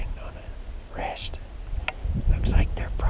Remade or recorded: recorded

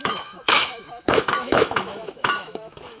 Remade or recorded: remade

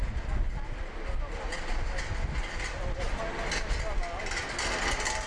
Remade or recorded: recorded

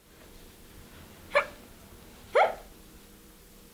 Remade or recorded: recorded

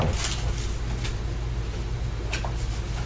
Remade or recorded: recorded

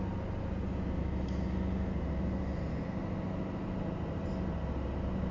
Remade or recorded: recorded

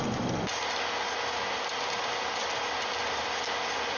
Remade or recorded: recorded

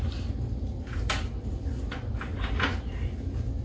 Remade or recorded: recorded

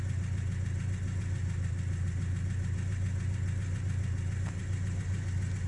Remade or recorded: recorded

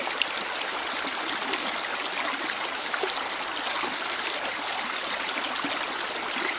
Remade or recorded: recorded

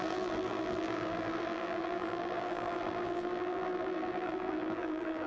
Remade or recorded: remade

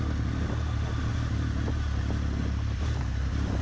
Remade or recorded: recorded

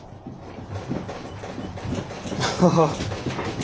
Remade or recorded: recorded